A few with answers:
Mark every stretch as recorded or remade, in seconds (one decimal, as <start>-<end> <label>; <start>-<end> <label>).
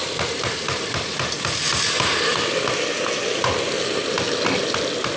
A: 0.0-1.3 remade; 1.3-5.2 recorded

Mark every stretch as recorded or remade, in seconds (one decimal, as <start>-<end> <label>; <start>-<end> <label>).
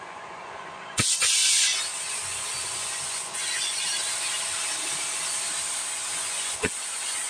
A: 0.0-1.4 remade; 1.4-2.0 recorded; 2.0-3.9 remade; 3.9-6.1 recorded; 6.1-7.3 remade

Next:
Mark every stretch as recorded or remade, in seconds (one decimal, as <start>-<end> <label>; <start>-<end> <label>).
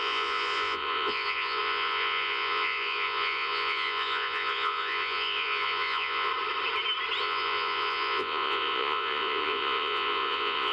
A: 0.0-6.3 remade; 6.3-7.2 recorded; 7.2-10.7 remade